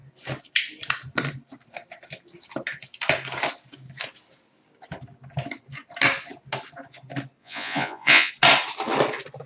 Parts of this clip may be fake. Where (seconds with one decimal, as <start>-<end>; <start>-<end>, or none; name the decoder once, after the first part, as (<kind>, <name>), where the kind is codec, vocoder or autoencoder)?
7.4-8.3 (vocoder, Vocos)